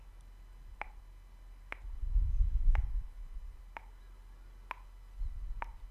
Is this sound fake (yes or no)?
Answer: no